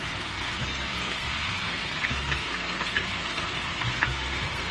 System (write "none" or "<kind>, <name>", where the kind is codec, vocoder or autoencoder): codec, SNAC